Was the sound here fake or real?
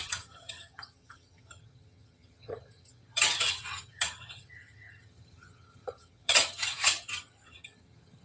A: fake